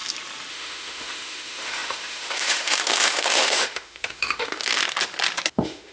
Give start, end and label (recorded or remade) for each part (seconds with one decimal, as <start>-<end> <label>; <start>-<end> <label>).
0.0-0.5 recorded; 0.5-4.8 remade; 4.8-5.5 recorded; 5.5-5.9 remade